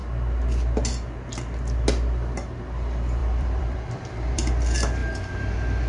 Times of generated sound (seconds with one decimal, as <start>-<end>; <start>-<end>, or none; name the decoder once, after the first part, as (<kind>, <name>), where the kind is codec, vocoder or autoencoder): 3.2-4.5 (vocoder, BigVGAN v2)